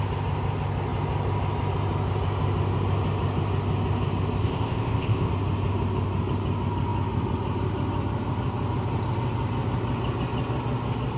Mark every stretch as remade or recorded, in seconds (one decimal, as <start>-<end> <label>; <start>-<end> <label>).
0.0-4.4 recorded; 4.4-5.3 remade; 5.3-11.2 recorded